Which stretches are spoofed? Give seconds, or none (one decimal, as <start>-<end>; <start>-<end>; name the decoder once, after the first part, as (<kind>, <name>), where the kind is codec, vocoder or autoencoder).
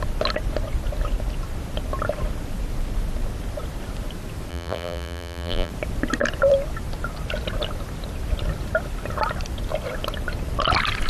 4.5-5.7 (vocoder, BigVGAN v2)